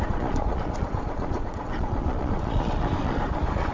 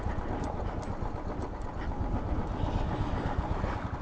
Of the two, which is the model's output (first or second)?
first